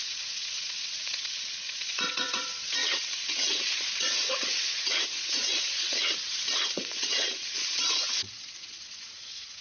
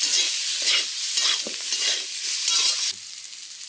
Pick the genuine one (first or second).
second